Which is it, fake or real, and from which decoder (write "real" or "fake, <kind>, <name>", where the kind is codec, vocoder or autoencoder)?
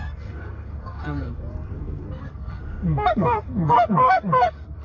fake, codec, SNAC